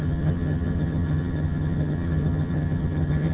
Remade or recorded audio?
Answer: remade